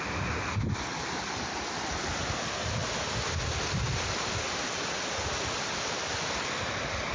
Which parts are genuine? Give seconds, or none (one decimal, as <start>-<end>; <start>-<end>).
0.0-7.1